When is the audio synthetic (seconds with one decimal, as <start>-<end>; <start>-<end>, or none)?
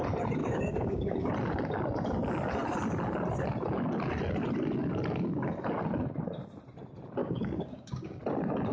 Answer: 0.4-1.3; 7.2-8.2